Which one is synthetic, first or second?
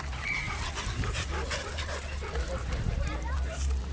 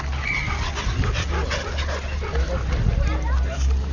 first